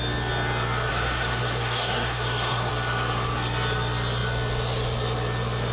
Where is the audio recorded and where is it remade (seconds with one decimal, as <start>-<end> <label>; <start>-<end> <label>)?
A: 0.0-0.9 recorded; 0.9-2.7 remade; 2.7-5.7 recorded